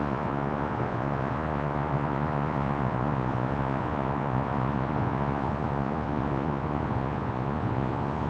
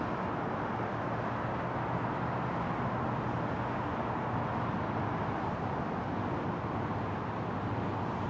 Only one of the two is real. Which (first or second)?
second